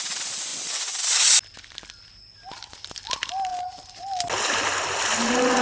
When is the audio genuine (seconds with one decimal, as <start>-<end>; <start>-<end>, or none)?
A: 0.0-5.6